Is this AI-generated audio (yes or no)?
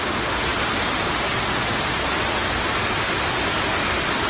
no